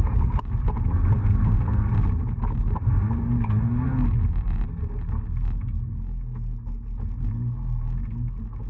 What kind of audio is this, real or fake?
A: real